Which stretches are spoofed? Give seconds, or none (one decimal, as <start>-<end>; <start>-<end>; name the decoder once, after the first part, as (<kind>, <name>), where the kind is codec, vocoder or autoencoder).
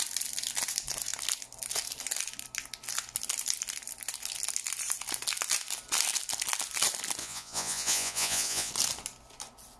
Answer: 7.2-8.7 (vocoder, Vocos)